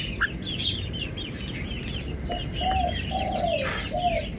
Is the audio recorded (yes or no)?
yes